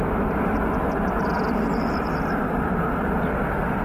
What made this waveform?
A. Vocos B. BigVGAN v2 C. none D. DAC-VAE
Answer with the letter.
C